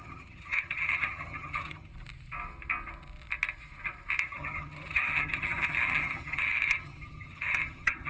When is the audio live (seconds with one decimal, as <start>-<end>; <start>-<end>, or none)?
1.9-4.2